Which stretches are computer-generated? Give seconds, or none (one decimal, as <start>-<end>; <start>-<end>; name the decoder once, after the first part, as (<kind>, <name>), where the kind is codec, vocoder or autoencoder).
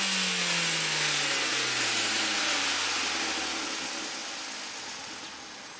none